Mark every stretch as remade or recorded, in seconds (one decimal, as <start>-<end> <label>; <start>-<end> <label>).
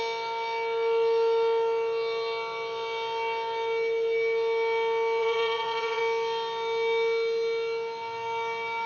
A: 0.0-5.2 recorded; 5.2-6.0 remade; 6.0-8.9 recorded